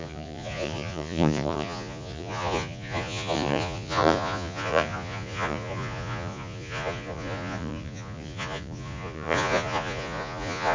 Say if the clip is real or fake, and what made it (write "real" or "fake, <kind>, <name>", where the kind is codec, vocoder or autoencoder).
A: fake, vocoder, Vocos